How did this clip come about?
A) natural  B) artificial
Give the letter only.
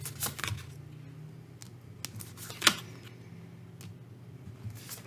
A